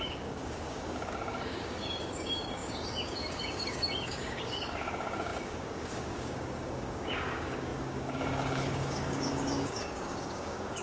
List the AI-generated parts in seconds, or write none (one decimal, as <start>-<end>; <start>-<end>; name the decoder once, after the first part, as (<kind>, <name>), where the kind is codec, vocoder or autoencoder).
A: 0.0-10.8 (codec, DAC)